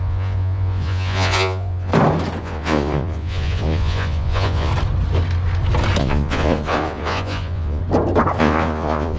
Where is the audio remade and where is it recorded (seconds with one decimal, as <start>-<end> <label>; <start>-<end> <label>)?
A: 0.0-1.9 remade; 1.9-2.4 recorded; 2.4-4.7 remade; 4.7-6.0 recorded; 6.0-7.8 remade; 7.8-8.4 recorded; 8.4-9.2 remade